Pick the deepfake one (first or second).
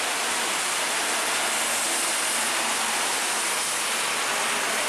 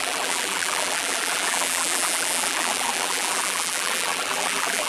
second